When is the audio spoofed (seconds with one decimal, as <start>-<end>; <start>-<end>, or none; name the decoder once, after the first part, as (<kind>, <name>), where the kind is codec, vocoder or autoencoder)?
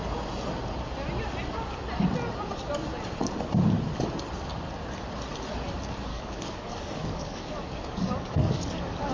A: 6.1-9.1 (codec, DAC)